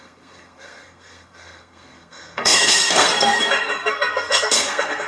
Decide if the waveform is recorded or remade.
remade